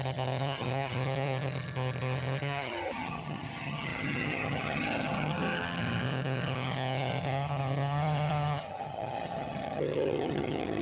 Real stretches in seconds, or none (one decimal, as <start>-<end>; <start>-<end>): none